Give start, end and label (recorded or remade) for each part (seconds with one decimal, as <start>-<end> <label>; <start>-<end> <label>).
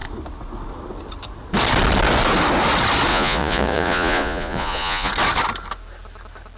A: 0.0-3.1 recorded; 3.1-5.1 remade; 5.1-6.6 recorded